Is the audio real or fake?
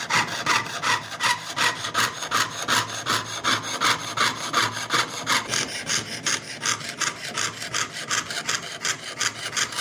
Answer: real